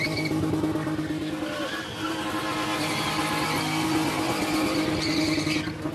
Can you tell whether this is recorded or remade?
recorded